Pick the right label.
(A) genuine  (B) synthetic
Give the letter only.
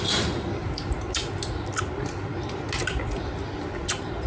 A